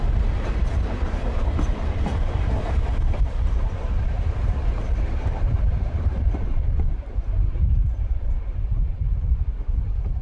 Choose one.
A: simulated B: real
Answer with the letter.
A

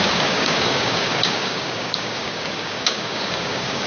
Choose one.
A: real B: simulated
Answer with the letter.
B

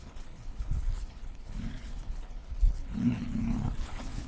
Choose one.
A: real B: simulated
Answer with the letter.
B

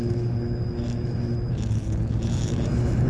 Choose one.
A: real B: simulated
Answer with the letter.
B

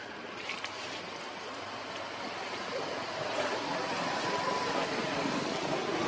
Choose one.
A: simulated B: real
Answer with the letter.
B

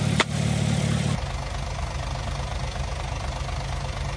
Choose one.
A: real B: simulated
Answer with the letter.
A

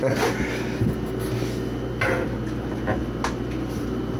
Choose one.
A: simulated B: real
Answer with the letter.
B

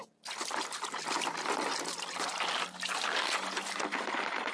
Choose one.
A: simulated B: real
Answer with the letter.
B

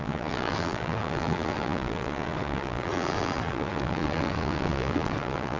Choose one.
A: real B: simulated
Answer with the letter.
B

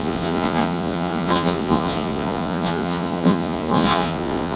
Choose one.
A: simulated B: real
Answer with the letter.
A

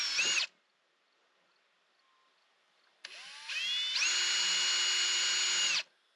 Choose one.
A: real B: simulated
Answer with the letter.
A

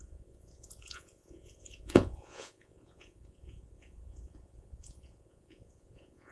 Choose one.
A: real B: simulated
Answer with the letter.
B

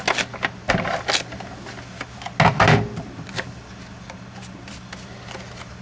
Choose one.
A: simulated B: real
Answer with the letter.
B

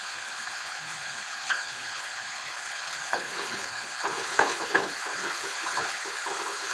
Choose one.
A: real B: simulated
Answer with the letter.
B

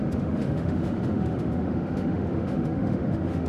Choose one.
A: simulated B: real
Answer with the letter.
A